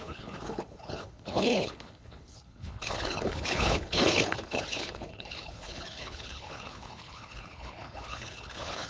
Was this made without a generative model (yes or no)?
no